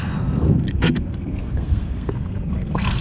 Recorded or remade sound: remade